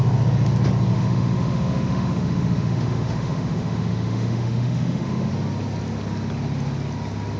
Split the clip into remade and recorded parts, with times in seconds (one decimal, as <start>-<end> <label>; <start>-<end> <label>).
0.0-0.9 recorded; 0.9-5.3 remade; 5.3-7.4 recorded